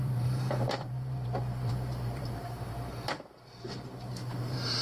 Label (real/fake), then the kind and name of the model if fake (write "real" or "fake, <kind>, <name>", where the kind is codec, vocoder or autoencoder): fake, vocoder, BigVGAN v2